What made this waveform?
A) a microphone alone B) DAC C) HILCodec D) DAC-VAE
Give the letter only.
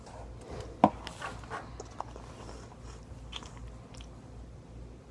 A